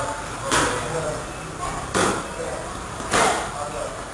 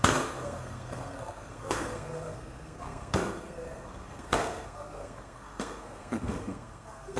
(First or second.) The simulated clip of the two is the second